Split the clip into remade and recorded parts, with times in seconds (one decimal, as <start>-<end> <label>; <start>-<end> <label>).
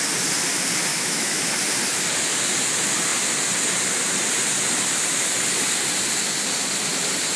0.0-0.9 recorded; 0.9-1.4 remade; 1.4-7.4 recorded